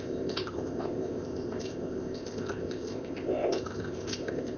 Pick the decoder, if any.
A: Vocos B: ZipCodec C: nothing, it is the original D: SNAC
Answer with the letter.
B